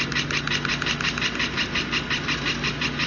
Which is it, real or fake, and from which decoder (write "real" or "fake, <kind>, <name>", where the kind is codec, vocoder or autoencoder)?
real